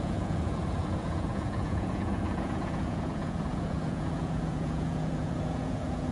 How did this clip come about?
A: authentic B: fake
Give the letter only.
B